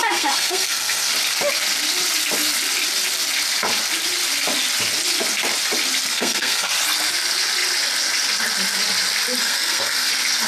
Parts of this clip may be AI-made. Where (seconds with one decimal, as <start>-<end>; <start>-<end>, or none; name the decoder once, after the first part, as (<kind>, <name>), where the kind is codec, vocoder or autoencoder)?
0.0-1.1 (codec, SNAC); 6.1-6.7; 9.4-10.1

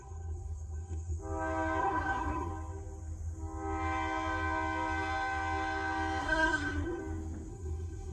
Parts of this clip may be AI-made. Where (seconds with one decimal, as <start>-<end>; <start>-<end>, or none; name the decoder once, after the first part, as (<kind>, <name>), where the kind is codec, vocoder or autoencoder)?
0.0-1.2 (codec, SNAC); 1.8-2.5; 6.2-7.0; 7.5-8.1